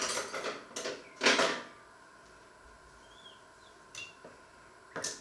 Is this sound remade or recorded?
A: recorded